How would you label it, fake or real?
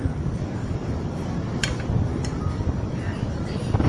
fake